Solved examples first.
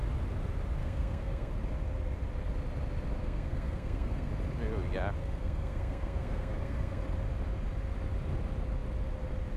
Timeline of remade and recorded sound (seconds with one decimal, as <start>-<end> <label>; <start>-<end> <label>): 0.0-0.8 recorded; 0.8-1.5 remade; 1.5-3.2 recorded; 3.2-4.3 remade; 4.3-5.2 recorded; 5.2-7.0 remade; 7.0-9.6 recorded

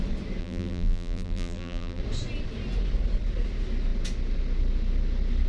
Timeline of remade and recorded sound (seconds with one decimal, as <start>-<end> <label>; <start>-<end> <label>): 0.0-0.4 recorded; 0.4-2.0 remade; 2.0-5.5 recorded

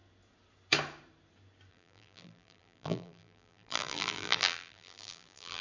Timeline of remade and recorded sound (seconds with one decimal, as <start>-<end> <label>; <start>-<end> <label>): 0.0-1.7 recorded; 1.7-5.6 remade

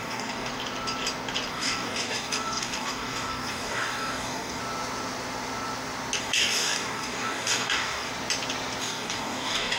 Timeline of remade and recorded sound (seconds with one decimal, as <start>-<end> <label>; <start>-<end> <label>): 0.0-0.5 remade; 0.5-1.5 recorded; 1.5-4.6 remade; 4.6-6.2 recorded; 6.2-8.1 remade; 8.1-8.8 recorded; 8.8-9.8 remade

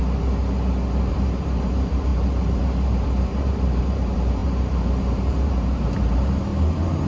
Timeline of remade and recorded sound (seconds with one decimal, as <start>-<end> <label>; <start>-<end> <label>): 0.0-1.1 recorded; 1.1-6.5 remade; 6.5-7.1 recorded

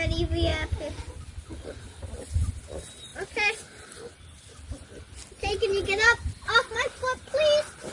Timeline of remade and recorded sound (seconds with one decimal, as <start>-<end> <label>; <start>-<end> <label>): 0.0-7.9 recorded

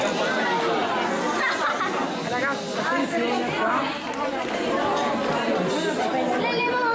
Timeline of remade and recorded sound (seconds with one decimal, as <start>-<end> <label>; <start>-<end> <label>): 0.0-6.9 recorded

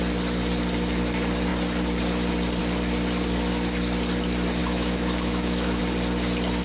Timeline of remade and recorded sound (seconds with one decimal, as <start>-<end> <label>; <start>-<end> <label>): 0.0-4.6 recorded; 4.6-5.8 remade; 5.8-6.6 recorded